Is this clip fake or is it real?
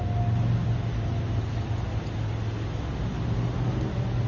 real